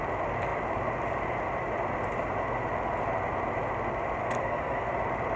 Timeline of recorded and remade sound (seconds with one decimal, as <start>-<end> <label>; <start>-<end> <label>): 0.0-4.2 recorded; 4.2-4.9 remade; 4.9-5.4 recorded